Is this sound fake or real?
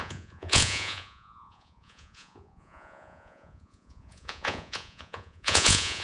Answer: fake